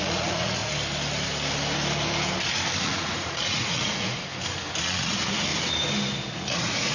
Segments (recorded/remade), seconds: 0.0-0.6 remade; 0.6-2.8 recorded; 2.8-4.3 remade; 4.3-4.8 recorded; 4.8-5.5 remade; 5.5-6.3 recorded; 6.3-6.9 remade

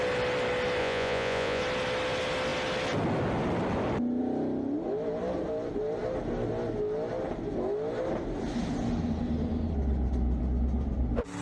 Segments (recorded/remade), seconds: 0.0-0.8 recorded; 0.8-1.6 remade; 1.6-11.4 recorded

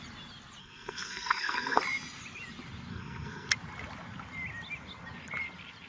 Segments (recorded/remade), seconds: 0.0-0.6 recorded; 0.6-1.8 remade; 1.8-2.9 recorded; 2.9-3.5 remade; 3.5-5.9 recorded